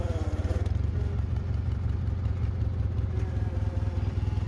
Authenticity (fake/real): real